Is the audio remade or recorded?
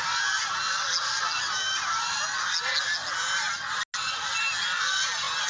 recorded